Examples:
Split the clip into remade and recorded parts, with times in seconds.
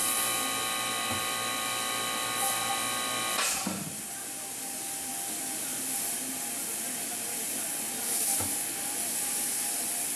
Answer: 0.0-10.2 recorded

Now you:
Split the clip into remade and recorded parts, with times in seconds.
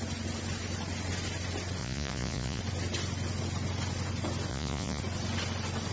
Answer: 0.0-1.8 recorded; 1.8-2.6 remade; 2.6-4.5 recorded; 4.5-5.0 remade; 5.0-5.9 recorded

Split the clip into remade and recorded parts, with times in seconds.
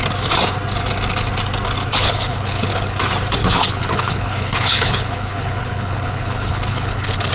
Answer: 0.0-1.9 recorded; 1.9-3.0 remade; 3.0-3.4 recorded; 3.4-7.3 remade